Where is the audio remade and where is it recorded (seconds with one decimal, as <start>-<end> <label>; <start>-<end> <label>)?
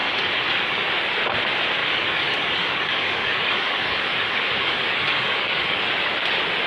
0.0-0.9 remade; 0.9-1.8 recorded; 1.8-5.8 remade; 5.8-6.7 recorded